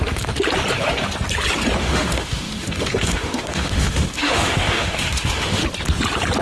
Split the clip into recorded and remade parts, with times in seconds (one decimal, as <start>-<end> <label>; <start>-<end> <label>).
0.0-1.8 recorded; 1.8-5.6 remade; 5.6-6.4 recorded